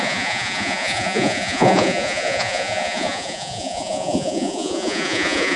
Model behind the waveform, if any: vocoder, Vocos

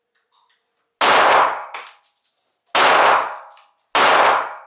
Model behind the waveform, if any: none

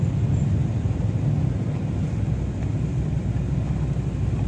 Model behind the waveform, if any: none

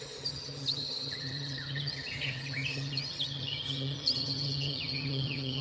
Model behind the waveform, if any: vocoder, HiFi-GAN